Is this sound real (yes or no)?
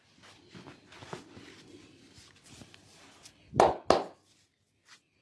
yes